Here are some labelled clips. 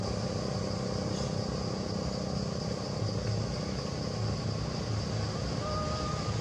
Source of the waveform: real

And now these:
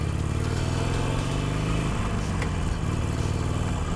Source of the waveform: real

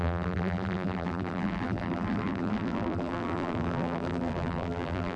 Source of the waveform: fake